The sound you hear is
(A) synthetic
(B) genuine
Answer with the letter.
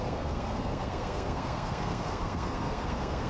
A